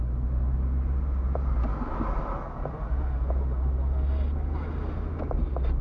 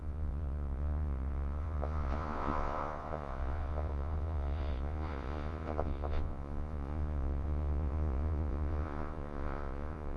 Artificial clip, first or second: second